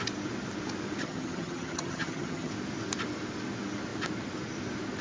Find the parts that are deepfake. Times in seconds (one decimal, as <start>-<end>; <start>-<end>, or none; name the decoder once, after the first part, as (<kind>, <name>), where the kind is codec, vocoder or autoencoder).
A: 1.0-2.5 (vocoder, HiFi-GAN)